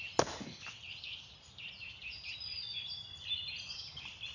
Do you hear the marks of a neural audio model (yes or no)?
no